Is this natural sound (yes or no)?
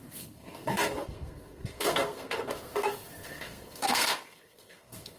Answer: no